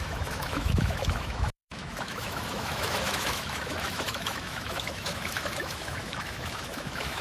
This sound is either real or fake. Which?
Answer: fake